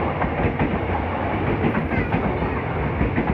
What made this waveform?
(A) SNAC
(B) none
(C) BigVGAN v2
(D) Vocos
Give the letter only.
B